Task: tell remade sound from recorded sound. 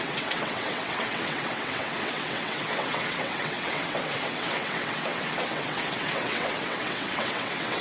remade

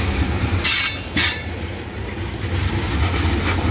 recorded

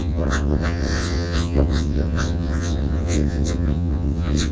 remade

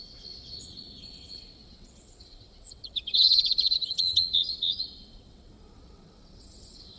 remade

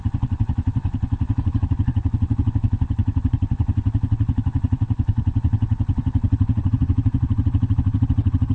remade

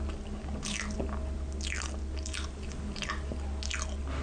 recorded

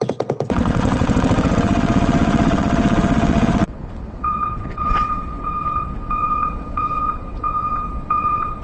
remade